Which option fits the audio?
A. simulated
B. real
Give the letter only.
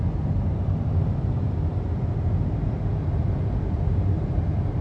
B